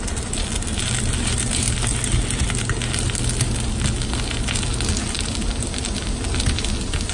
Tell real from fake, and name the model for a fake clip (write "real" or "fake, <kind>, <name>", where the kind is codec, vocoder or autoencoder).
real